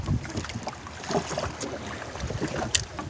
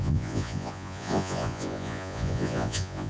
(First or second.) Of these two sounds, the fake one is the second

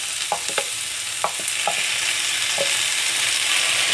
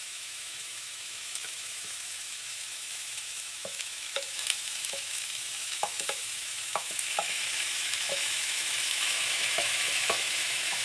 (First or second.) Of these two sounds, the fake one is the second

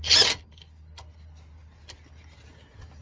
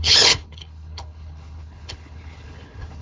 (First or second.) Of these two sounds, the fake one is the second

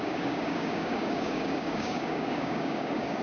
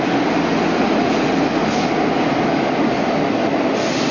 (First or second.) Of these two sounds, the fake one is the first